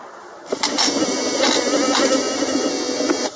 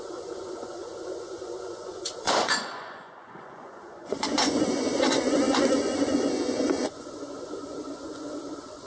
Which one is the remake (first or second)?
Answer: second